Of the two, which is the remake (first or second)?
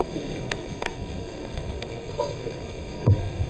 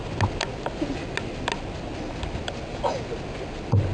first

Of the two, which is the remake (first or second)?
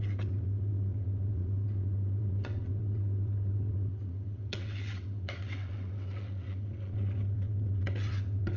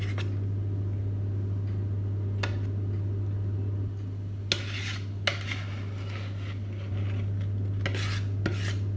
first